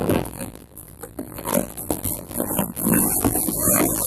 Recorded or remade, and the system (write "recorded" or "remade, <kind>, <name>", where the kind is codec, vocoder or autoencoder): remade, vocoder, BigVGAN v2